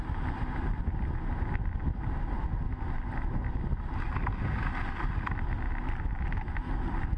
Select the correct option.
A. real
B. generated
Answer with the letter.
A